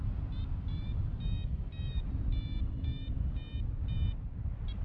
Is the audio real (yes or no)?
yes